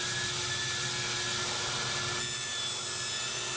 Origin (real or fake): real